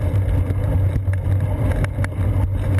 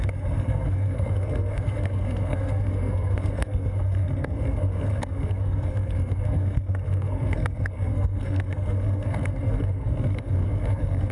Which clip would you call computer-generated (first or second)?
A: second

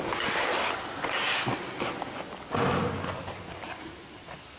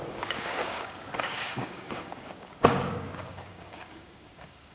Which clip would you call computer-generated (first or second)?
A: second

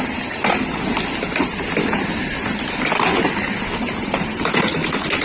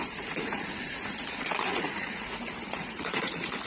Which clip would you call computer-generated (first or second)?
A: second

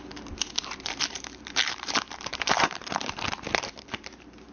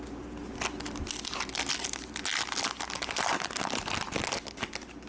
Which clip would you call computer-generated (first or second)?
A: first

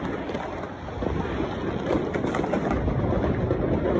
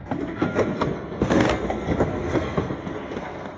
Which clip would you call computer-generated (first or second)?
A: second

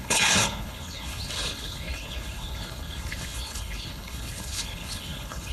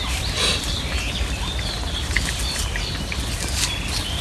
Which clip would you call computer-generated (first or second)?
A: first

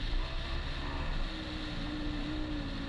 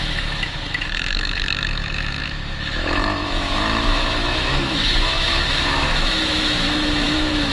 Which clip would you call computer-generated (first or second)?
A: second